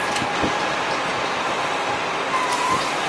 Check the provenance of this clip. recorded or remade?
recorded